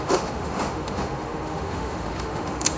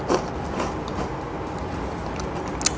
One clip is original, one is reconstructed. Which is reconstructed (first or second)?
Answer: first